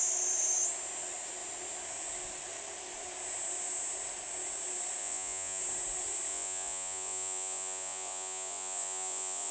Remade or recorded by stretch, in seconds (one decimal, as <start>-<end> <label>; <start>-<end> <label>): 0.0-5.0 recorded; 5.0-5.6 remade; 5.6-6.3 recorded; 6.3-9.5 remade